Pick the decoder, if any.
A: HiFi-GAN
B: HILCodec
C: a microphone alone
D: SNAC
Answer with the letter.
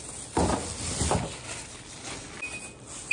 C